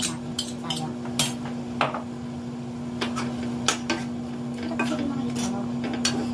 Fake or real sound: real